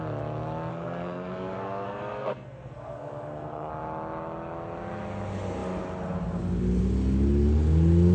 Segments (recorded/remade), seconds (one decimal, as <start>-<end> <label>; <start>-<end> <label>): 0.0-0.7 recorded; 0.7-3.7 remade; 3.7-8.1 recorded